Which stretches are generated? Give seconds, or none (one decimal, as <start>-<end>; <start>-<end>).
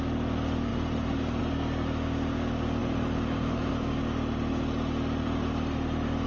0.7-1.4; 2.8-3.7